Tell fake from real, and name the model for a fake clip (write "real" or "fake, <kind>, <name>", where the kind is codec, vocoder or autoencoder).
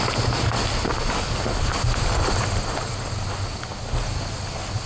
real